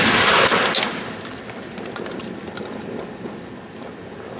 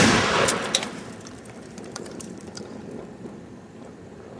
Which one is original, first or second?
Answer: first